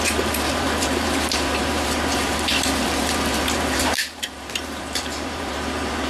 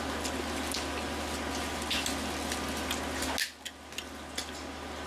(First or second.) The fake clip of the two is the first